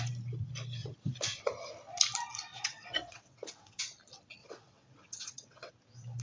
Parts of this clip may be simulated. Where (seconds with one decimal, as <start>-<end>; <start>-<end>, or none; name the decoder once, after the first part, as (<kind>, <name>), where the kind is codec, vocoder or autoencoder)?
2.5-3.8 (vocoder, WaveNeXt); 4.4-5.7